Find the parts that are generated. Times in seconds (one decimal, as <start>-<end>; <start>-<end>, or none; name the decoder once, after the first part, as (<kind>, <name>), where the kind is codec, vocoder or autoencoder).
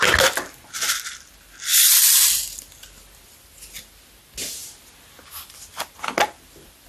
none